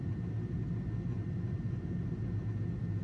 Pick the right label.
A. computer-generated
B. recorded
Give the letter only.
B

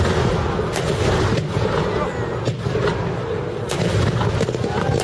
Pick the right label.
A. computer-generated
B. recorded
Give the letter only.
B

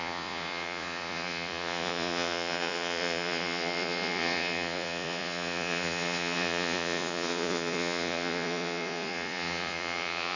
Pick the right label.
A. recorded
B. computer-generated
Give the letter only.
B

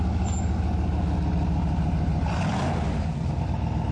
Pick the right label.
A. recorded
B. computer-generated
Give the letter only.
A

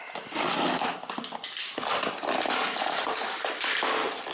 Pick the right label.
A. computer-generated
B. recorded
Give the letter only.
B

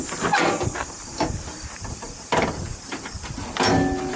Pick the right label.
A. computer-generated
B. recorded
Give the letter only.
B